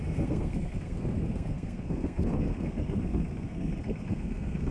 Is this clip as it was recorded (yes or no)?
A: no